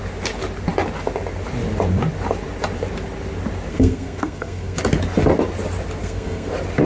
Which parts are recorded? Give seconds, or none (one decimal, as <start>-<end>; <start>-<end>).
0.0-3.7; 4.8-6.0; 6.5-6.9